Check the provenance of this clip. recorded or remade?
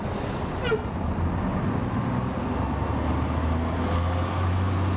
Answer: recorded